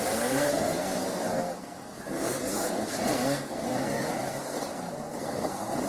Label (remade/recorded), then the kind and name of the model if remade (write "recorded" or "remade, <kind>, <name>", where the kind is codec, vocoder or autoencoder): remade, codec, SNAC